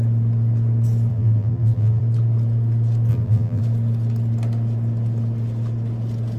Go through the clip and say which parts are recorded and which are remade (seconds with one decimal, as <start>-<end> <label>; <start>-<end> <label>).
0.0-1.1 recorded; 1.1-2.0 remade; 2.0-3.1 recorded; 3.1-3.6 remade; 3.6-6.4 recorded